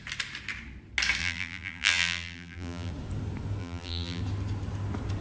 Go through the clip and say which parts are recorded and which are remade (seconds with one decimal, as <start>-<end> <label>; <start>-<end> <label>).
0.0-1.2 recorded; 1.2-2.9 remade; 2.9-3.6 recorded; 3.6-4.2 remade; 4.2-5.2 recorded